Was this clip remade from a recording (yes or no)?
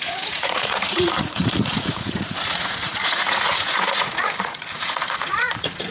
yes